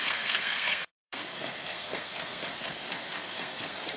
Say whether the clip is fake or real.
fake